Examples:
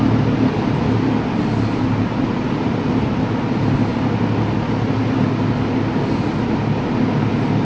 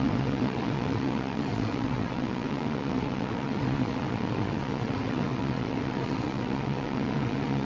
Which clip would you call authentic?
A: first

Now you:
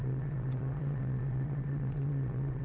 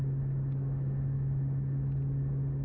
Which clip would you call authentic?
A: second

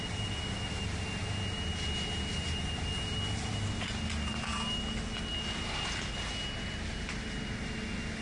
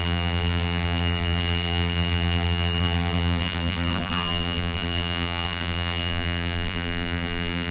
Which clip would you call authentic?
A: first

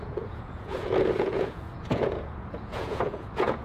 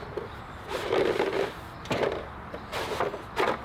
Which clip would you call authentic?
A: second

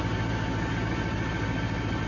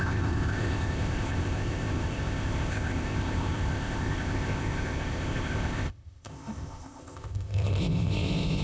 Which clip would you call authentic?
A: first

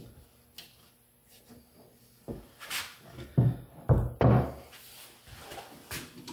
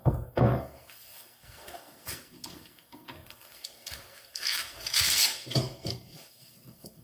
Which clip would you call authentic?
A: first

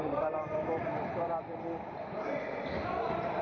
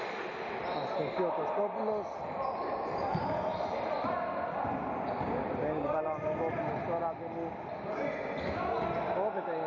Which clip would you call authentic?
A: second